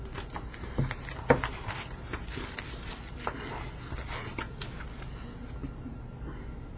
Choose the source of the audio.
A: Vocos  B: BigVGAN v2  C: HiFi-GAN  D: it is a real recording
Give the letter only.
D